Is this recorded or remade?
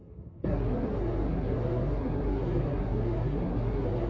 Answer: remade